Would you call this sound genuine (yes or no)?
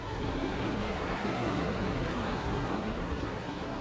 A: no